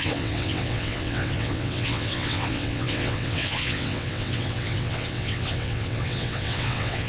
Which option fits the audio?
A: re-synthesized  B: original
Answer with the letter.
A